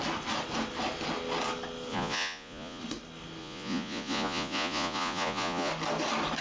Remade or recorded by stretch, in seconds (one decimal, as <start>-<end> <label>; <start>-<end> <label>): 0.0-1.9 recorded; 1.9-2.8 remade; 2.8-3.4 recorded; 3.4-5.7 remade; 5.7-6.4 recorded